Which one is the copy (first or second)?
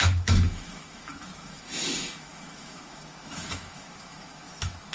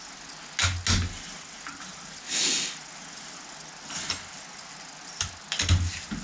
first